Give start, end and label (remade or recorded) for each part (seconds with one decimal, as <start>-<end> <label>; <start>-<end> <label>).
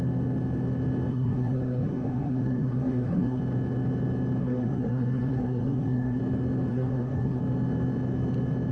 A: 0.0-1.1 recorded; 1.1-3.4 remade; 3.4-4.4 recorded; 4.4-6.2 remade; 6.2-6.7 recorded; 6.7-7.4 remade; 7.4-8.7 recorded